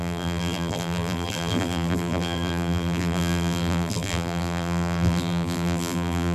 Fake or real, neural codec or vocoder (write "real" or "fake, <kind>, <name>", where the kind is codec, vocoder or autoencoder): fake, vocoder, BigVGAN v2